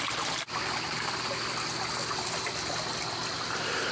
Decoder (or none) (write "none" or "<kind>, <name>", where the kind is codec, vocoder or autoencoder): none